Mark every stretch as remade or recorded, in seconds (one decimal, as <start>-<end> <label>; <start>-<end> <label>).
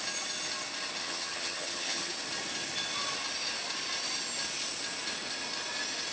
0.0-1.0 recorded; 1.0-2.1 remade; 2.1-6.1 recorded